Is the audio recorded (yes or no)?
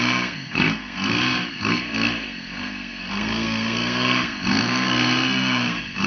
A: no